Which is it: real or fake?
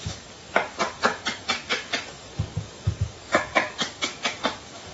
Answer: fake